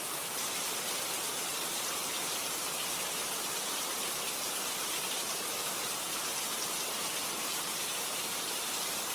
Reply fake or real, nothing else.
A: fake